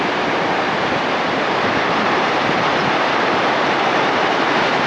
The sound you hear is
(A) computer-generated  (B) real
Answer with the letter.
A